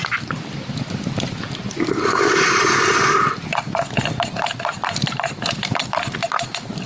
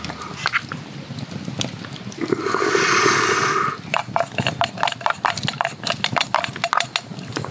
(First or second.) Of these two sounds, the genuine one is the second